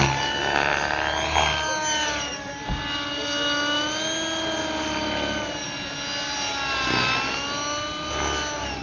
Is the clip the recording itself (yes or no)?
yes